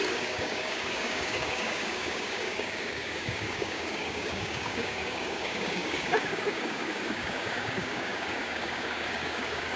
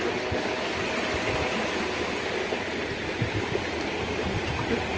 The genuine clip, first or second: second